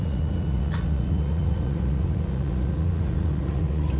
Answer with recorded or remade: remade